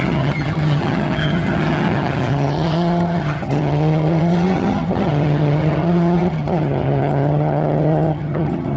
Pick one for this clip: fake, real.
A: fake